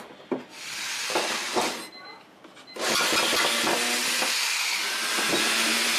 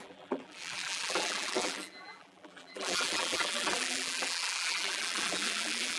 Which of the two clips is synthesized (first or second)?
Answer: second